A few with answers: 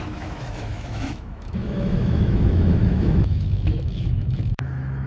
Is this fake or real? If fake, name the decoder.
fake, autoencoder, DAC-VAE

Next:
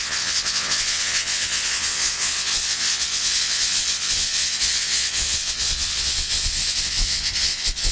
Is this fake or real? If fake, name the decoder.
fake, vocoder, WaveNeXt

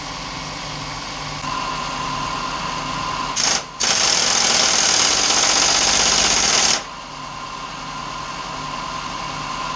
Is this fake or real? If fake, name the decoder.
real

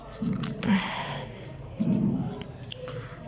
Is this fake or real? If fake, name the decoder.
fake, vocoder, BigVGAN v2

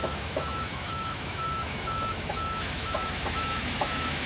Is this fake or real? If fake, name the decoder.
fake, autoencoder, DAC-VAE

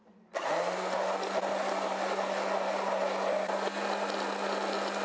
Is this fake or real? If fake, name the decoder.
real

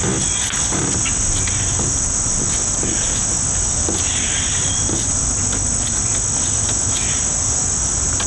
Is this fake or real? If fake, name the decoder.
real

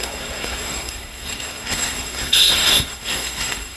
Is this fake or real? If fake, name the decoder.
fake, codec, SNAC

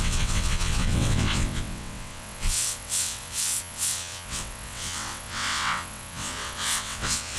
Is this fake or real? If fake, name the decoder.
fake, vocoder, WaveNeXt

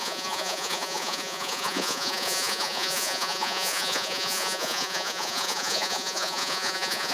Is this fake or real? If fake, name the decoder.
fake, vocoder, Vocos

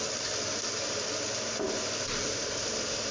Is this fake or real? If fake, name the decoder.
real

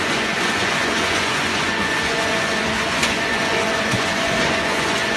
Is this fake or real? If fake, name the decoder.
fake, vocoder, Vocos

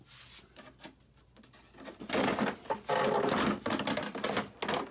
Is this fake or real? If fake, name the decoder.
real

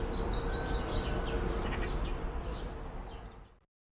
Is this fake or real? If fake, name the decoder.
real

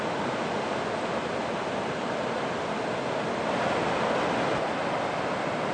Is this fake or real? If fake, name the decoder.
real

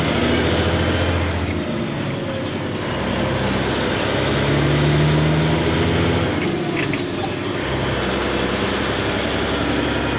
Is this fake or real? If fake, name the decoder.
real